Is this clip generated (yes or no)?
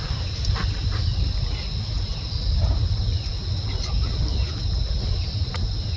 no